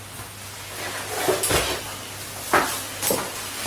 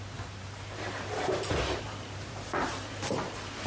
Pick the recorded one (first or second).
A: first